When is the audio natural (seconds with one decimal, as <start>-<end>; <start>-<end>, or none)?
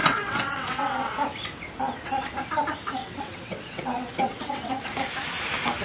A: 1.1-3.0; 4.7-5.8